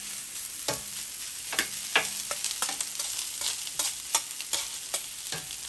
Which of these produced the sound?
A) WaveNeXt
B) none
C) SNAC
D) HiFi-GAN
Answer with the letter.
B